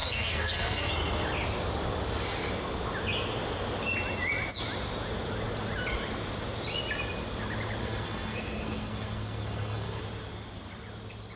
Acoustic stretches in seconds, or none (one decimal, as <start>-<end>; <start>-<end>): 0.9-7.8; 10.0-11.4